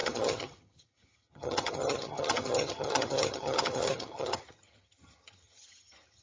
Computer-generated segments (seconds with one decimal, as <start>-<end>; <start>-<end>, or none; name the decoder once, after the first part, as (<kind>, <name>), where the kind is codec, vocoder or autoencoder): 0.0-6.2 (vocoder, HiFi-GAN)